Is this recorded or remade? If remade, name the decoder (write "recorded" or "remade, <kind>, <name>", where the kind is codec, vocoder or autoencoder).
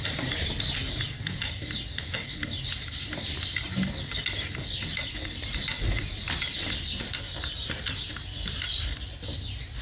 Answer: recorded